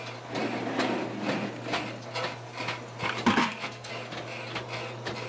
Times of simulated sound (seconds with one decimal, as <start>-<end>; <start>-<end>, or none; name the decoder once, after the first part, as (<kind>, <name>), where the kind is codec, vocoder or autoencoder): 3.4-3.9 (codec, SNAC)